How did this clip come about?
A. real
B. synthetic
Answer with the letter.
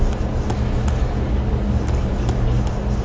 A